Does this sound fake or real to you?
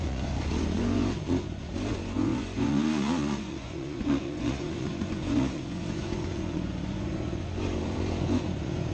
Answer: fake